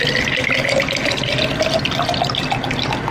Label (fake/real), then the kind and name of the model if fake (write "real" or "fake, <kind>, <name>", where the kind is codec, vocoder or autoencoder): real